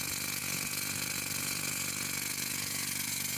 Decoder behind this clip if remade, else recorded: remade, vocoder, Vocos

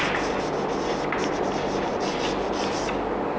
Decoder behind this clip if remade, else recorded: recorded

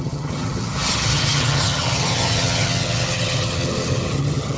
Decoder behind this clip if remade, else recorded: remade, vocoder, HiFi-GAN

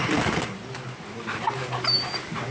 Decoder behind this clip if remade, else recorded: recorded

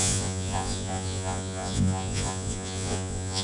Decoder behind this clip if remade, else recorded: remade, vocoder, Vocos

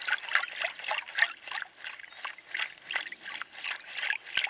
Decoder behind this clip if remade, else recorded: recorded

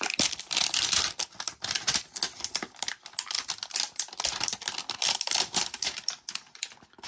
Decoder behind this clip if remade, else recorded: recorded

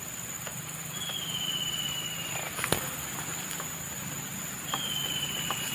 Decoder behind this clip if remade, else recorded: recorded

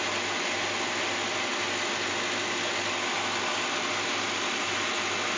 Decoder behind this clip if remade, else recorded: recorded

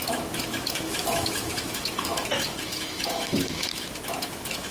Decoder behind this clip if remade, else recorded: remade, autoencoder, DAC-VAE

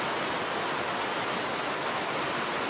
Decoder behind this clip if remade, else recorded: recorded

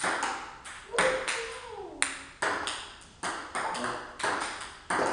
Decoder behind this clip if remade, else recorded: recorded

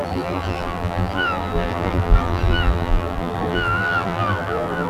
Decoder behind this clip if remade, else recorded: remade, vocoder, BigVGAN v2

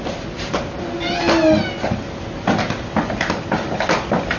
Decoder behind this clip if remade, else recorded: recorded